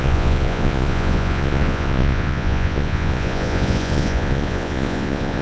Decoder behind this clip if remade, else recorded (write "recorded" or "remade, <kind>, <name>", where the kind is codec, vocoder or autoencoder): remade, vocoder, Vocos